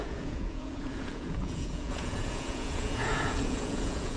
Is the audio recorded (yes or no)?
no